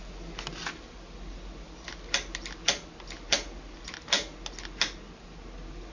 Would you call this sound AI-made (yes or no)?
no